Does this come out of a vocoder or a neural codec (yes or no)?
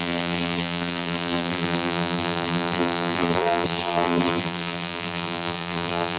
yes